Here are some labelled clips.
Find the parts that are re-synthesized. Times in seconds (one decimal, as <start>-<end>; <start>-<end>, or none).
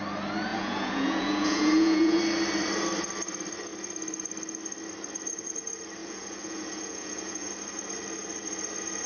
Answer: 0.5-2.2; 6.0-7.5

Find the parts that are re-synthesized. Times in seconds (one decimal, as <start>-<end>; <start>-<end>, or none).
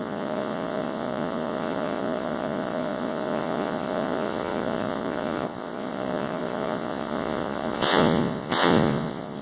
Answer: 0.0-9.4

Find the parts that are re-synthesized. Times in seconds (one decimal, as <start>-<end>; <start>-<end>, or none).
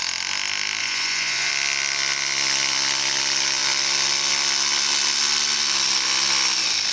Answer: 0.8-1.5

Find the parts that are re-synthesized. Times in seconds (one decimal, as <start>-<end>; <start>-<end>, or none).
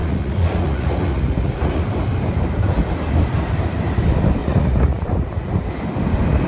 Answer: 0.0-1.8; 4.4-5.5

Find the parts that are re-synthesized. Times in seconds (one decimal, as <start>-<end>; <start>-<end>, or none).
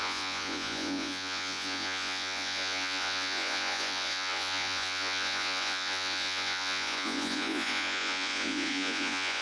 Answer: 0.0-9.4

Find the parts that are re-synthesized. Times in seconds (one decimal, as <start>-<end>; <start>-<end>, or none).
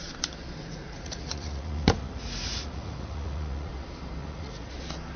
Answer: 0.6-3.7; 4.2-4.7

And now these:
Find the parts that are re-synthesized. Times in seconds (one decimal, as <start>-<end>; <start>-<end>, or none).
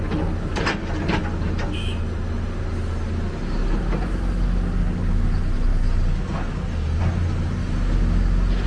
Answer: none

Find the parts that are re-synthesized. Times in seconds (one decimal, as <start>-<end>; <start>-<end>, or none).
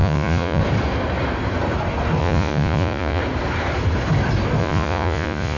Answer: 0.0-0.6; 2.2-3.2; 4.6-5.6